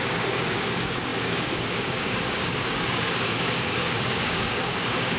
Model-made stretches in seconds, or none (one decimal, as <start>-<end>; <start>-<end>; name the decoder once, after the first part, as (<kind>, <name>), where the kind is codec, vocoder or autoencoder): 0.0-5.2 (codec, DAC)